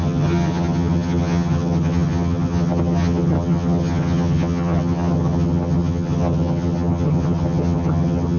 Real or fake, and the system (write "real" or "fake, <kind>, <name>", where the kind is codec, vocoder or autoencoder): fake, vocoder, HiFi-GAN